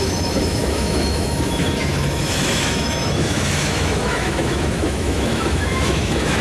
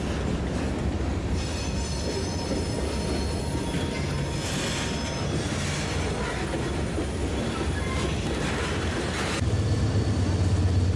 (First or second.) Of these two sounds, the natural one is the second